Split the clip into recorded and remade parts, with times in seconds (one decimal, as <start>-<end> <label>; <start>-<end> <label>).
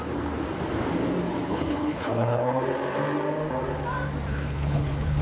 0.0-1.4 recorded; 1.4-2.6 remade; 2.6-4.3 recorded; 4.3-5.2 remade